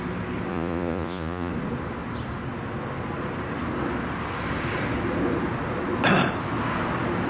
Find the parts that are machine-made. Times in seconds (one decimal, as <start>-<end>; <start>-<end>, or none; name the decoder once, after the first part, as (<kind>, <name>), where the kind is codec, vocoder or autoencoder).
0.5-1.5 (vocoder, Vocos)